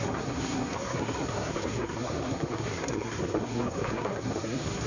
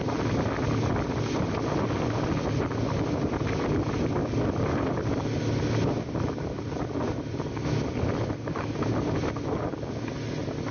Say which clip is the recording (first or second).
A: second